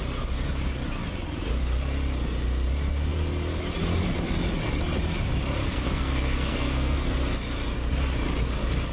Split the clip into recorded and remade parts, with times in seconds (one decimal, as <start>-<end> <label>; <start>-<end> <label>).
0.0-5.6 recorded; 5.6-7.1 remade; 7.1-8.9 recorded